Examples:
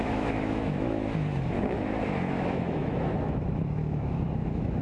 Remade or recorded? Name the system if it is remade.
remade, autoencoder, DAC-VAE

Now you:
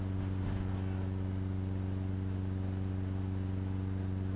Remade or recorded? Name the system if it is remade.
recorded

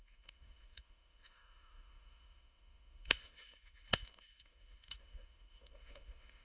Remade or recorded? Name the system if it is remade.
remade, autoencoder, DAC-VAE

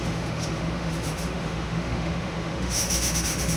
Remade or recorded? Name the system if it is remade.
remade, autoencoder, DAC-VAE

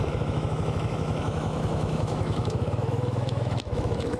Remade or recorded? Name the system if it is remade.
remade, autoencoder, DAC-VAE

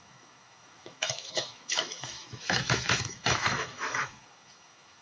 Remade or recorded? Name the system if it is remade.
remade, autoencoder, DAC-VAE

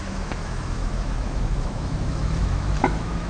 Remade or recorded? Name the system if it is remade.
remade, autoencoder, DAC-VAE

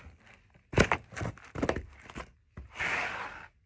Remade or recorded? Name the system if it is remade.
recorded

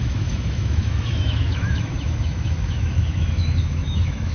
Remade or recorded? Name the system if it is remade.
remade, autoencoder, DAC-VAE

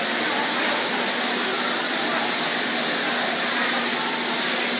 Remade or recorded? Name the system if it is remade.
recorded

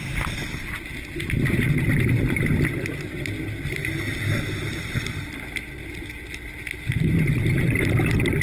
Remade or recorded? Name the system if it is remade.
recorded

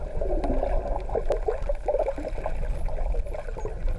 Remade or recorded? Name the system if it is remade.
recorded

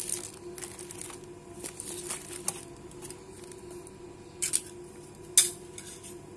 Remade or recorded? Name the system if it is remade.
recorded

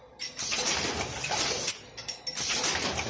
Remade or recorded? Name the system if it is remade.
recorded